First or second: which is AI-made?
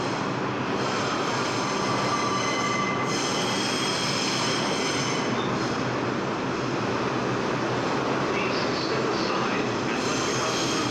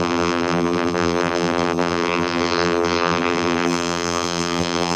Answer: second